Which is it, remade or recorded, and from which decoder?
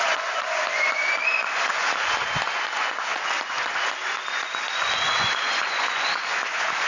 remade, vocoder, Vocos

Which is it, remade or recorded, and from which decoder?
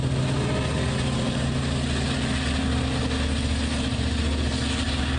recorded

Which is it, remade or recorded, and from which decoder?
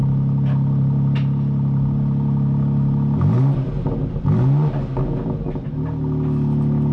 recorded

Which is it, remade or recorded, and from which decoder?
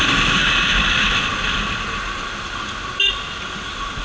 recorded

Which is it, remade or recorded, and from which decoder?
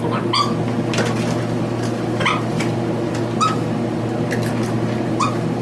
recorded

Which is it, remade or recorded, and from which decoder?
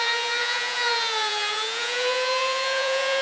remade, vocoder, Vocos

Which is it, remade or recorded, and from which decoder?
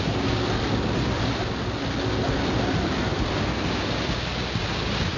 recorded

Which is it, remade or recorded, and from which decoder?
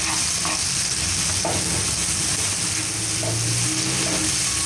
recorded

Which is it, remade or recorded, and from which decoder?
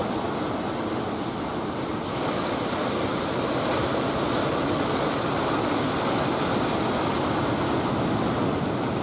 recorded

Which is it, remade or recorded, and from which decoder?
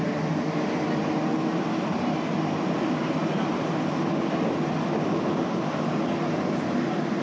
recorded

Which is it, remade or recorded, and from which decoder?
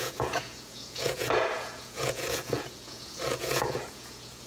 remade, vocoder, Vocos